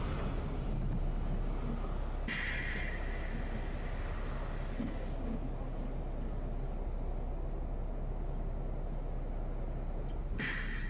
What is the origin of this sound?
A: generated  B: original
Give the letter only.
B